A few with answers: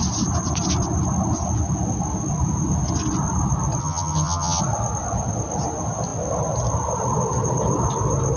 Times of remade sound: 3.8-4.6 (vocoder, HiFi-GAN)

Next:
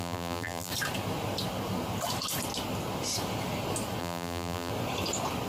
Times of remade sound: 0.0-0.7 (vocoder, BigVGAN v2); 4.0-4.7

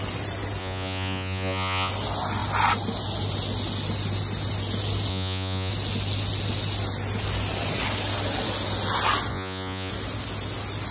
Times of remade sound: 0.6-1.9 (vocoder, Vocos); 5.1-5.7; 9.3-9.9

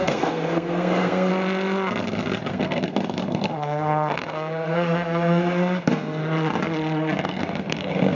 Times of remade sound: 0.0-1.3 (codec, SNAC); 2.5-6.2; 7.2-8.1